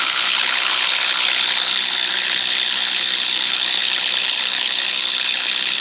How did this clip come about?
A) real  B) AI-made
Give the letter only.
B